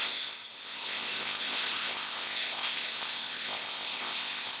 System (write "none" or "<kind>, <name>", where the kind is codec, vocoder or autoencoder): codec, ZipCodec